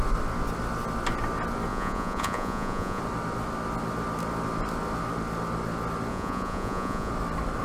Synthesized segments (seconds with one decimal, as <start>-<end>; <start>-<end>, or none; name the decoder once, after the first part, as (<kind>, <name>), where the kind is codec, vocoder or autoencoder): 1.7-3.0 (vocoder, Vocos); 6.1-7.1